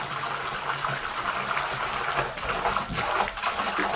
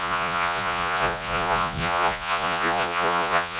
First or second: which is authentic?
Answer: first